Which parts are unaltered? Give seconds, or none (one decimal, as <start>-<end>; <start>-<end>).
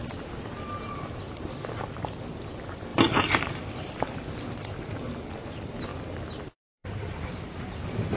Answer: 0.8-2.9; 4.6-5.9